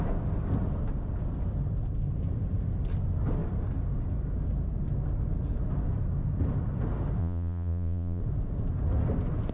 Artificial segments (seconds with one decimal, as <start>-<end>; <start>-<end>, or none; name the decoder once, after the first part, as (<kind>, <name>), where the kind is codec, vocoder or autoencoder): 7.2-8.2 (vocoder, Vocos)